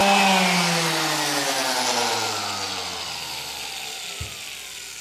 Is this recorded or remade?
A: recorded